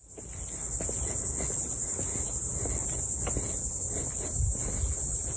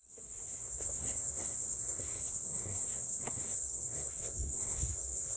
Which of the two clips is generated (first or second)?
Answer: second